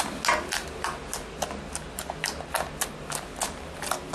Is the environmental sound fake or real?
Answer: real